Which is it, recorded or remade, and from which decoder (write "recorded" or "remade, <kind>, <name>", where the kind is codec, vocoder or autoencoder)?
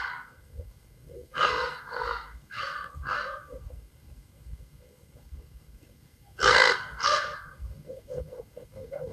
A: remade, codec, SNAC